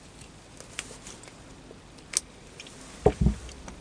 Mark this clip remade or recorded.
recorded